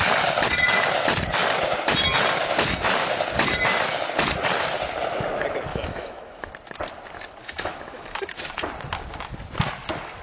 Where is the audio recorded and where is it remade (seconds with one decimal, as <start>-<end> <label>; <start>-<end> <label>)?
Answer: 0.0-5.7 recorded; 5.7-6.5 remade; 6.5-7.4 recorded; 7.4-8.4 remade; 8.4-10.2 recorded